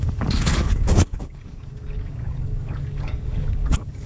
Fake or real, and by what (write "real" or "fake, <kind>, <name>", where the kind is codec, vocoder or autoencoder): fake, codec, DAC